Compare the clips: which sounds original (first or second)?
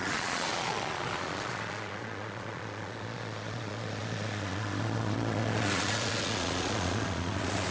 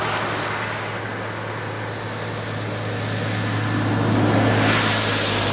second